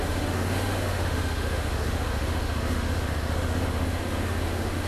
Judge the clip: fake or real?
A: fake